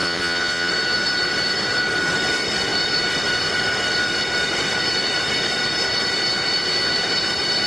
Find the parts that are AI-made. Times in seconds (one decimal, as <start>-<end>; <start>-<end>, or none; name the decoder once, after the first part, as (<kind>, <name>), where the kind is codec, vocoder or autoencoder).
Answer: 0.0-0.7 (vocoder, Vocos)